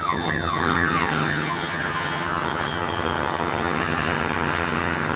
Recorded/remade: remade